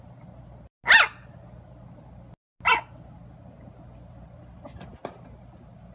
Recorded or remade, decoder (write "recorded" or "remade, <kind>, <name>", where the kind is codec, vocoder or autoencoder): recorded